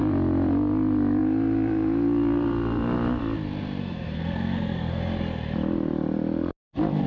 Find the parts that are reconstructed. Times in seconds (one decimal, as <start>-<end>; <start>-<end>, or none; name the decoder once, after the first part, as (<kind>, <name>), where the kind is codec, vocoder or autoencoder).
3.8-5.0 (codec, SNAC)